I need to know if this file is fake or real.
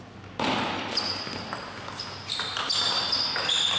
real